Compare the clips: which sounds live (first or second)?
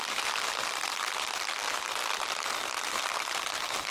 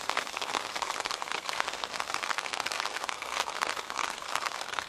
first